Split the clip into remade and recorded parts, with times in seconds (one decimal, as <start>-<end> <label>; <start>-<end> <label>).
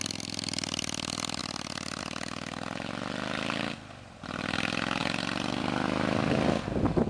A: 0.0-7.1 recorded